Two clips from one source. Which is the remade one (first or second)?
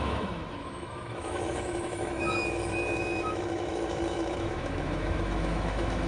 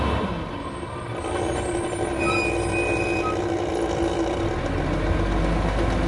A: first